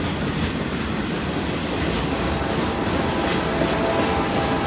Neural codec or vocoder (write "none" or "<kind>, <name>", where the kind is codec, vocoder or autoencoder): none